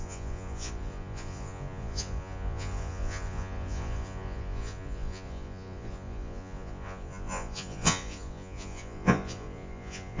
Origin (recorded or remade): remade